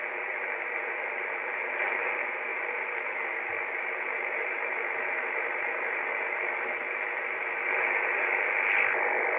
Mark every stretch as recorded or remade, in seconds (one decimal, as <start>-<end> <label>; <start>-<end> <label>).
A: 0.0-9.4 recorded